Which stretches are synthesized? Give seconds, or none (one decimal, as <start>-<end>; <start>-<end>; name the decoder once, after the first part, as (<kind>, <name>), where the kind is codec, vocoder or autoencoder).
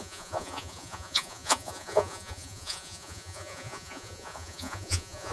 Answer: 0.0-5.3 (vocoder, Vocos)